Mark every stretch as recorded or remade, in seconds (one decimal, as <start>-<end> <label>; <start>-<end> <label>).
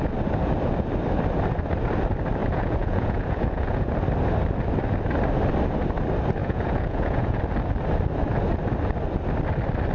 0.0-2.4 recorded; 2.4-3.9 remade; 3.9-6.4 recorded; 6.4-7.4 remade; 7.4-9.9 recorded